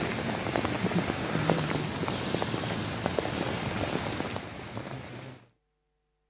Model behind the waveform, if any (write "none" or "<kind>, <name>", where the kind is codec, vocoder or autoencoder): none